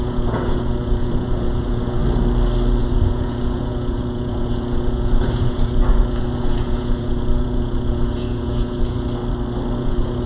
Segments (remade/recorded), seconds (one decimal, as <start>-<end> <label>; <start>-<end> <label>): 0.0-2.0 remade; 2.0-2.8 recorded; 2.8-9.2 remade; 9.2-9.8 recorded; 9.8-10.3 remade